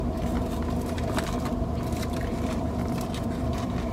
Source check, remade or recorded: remade